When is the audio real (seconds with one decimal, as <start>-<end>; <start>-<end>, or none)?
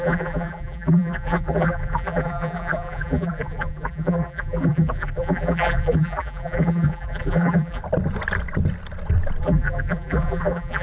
7.8-9.4